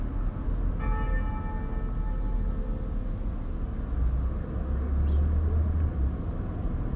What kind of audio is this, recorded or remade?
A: recorded